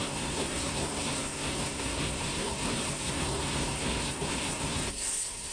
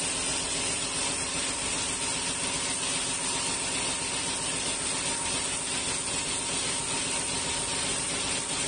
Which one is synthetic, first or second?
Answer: first